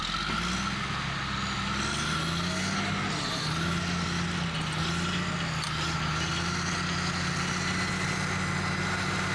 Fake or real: real